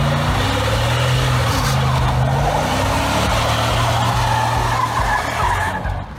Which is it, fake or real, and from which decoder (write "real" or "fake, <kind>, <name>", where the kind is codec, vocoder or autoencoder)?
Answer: real